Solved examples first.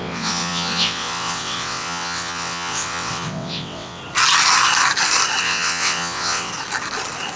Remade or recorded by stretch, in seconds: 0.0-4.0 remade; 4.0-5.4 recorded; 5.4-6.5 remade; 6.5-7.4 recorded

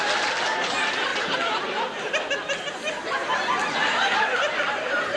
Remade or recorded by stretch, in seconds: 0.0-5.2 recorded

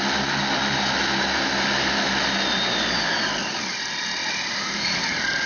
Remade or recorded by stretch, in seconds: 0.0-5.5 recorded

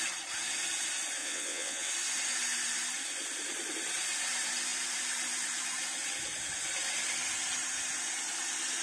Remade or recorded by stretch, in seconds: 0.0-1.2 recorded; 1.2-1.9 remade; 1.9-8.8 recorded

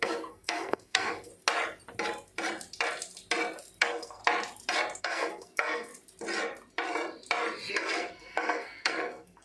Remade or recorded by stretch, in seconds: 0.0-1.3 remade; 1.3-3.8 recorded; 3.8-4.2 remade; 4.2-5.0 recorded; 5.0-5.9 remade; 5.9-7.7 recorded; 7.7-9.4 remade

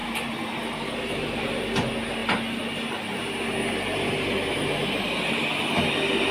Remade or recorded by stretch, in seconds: 0.0-1.6 remade; 1.6-6.3 recorded

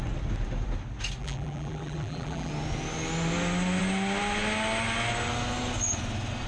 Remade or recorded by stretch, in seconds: 0.0-1.2 recorded; 1.2-2.5 remade; 2.5-6.5 recorded